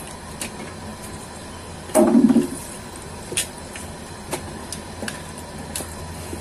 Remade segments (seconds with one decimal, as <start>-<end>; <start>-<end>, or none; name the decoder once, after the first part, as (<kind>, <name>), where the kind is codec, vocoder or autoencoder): 0.9-4.7 (vocoder, BigVGAN v2)